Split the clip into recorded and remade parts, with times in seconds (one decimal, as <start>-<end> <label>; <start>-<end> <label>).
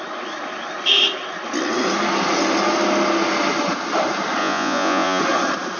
0.0-4.4 recorded; 4.4-5.2 remade; 5.2-5.8 recorded